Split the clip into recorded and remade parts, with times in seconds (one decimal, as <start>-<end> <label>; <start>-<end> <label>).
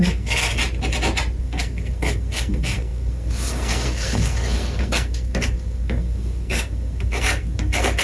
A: 0.0-0.6 remade; 0.6-1.4 recorded; 1.4-8.0 remade